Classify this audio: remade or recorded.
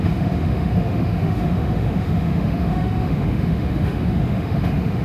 remade